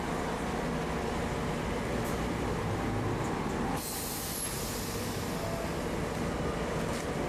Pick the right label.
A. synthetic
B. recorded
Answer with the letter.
B